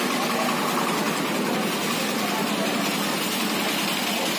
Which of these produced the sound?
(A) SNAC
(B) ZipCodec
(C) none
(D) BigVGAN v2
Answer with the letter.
C